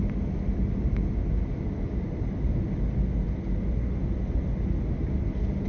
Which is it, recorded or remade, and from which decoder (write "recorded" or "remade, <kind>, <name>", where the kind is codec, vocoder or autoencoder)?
recorded